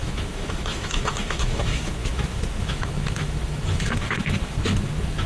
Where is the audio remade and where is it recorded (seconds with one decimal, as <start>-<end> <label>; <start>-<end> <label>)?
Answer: 0.0-5.3 remade

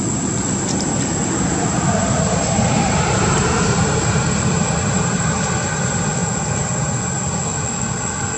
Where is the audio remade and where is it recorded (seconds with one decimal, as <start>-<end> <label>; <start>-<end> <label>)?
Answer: 0.0-1.7 recorded; 1.7-5.2 remade; 5.2-6.2 recorded; 6.2-7.0 remade; 7.0-8.4 recorded

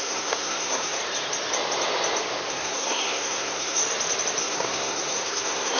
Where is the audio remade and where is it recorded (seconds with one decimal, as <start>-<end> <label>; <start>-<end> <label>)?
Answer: 0.0-1.0 remade; 1.0-2.5 recorded; 2.5-3.8 remade; 3.8-4.4 recorded; 4.4-5.8 remade